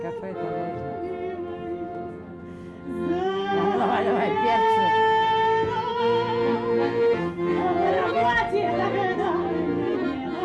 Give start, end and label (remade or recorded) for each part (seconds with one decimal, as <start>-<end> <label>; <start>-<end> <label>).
0.0-10.4 recorded